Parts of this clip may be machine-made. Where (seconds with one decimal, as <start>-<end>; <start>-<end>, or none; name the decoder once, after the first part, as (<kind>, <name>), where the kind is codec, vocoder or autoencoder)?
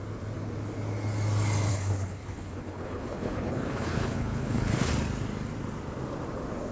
1.7-4.9 (codec, HILCodec)